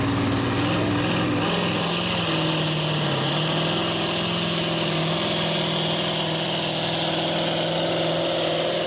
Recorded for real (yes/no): yes